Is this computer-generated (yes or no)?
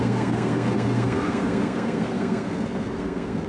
yes